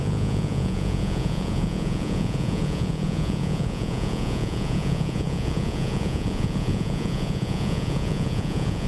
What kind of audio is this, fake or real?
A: fake